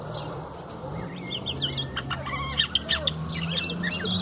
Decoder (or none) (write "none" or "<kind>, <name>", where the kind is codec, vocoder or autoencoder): none